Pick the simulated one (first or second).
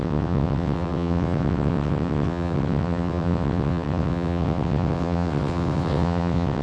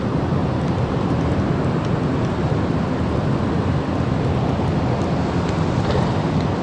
first